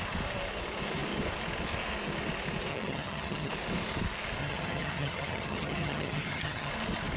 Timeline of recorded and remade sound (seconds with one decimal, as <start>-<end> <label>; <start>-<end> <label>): 0.0-2.7 recorded; 2.7-3.5 remade; 3.5-4.4 recorded; 4.4-6.7 remade; 6.7-7.2 recorded